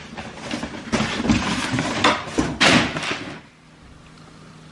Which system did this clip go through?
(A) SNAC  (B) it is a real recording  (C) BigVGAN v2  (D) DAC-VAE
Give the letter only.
B